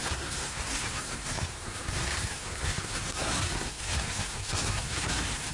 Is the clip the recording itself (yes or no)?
no